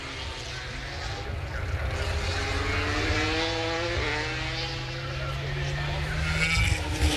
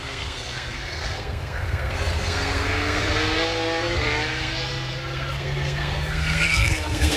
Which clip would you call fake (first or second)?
second